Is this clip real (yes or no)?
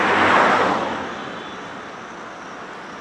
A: yes